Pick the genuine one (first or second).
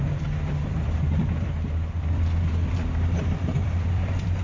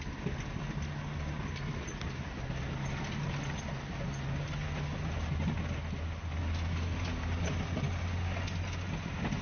second